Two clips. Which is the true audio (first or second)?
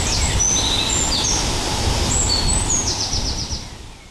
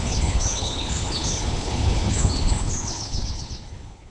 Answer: first